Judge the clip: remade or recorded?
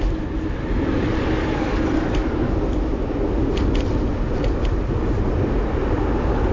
recorded